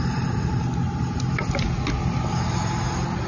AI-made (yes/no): no